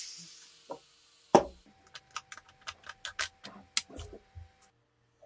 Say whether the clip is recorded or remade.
recorded